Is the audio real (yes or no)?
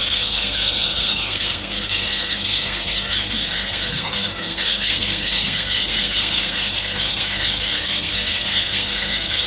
no